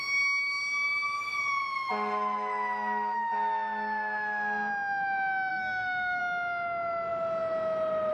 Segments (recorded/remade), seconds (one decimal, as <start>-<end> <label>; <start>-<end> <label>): 0.0-5.5 recorded; 5.5-6.2 remade; 6.2-8.1 recorded